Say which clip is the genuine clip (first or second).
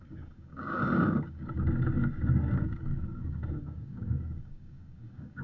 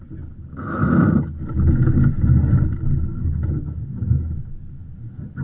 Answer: second